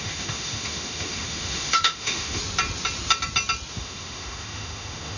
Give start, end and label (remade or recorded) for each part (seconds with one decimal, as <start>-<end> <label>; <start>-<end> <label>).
0.0-2.4 remade; 2.4-3.7 recorded; 3.7-5.2 remade